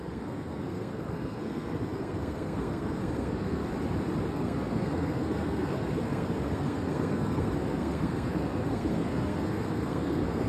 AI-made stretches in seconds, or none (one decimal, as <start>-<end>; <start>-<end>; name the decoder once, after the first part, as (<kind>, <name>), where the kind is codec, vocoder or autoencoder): 0.0-3.6 (codec, SNAC); 4.3-10.5